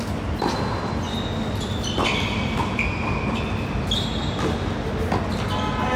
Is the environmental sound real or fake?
real